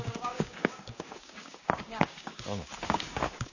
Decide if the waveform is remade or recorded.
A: remade